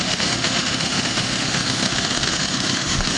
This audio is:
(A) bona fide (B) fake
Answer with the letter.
B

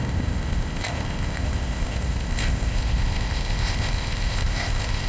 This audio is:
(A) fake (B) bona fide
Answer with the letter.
A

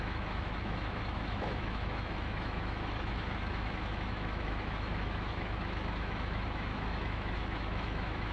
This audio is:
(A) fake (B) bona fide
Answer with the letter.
A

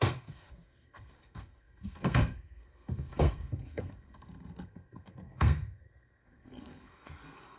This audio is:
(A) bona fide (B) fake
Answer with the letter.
B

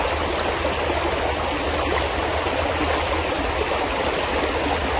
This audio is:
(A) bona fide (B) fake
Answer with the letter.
A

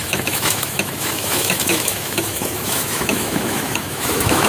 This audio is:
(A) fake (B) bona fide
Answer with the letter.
A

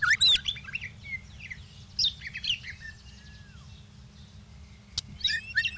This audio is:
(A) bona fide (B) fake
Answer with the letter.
A